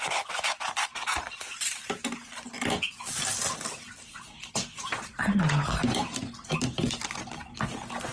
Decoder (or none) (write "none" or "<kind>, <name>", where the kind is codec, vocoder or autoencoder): none